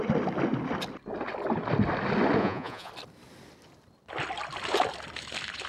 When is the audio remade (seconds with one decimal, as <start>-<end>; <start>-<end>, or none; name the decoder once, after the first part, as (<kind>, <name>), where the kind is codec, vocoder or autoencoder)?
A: 2.4-2.9 (vocoder, Vocos)